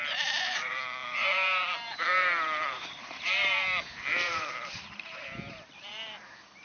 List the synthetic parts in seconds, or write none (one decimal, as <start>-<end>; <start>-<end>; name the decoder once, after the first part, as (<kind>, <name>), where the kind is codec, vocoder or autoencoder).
0.0-6.6 (vocoder, BigVGAN v2)